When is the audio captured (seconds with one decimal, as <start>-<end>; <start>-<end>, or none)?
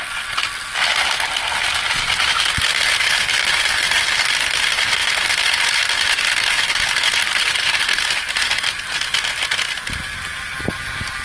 0.0-11.2